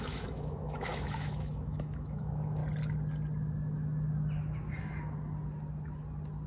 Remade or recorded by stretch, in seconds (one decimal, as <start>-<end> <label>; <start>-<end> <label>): 0.0-2.6 remade; 2.6-6.5 recorded